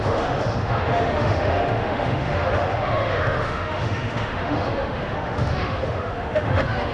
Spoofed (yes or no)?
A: yes